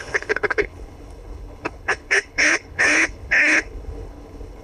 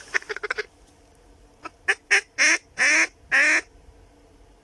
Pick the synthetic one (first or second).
first